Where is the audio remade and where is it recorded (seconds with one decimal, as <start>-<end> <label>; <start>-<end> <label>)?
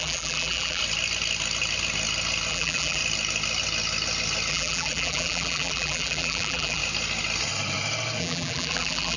0.0-0.8 remade; 0.8-2.5 recorded; 2.5-3.0 remade; 3.0-4.5 recorded; 4.5-6.8 remade; 6.8-8.2 recorded; 8.2-9.2 remade